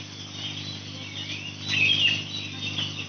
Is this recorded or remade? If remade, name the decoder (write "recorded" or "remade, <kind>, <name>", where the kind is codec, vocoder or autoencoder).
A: recorded